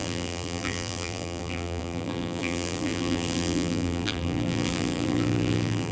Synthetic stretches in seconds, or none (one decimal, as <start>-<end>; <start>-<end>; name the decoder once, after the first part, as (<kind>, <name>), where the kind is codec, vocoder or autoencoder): 0.0-5.9 (vocoder, BigVGAN v2)